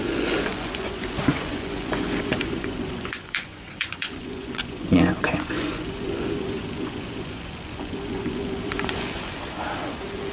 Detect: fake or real fake